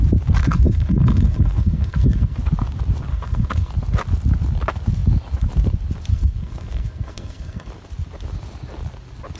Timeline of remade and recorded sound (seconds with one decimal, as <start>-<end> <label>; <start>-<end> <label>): 0.0-0.4 recorded; 0.4-2.4 remade; 2.4-3.1 recorded; 3.1-3.7 remade; 3.7-6.1 recorded; 6.1-7.7 remade; 7.7-9.4 recorded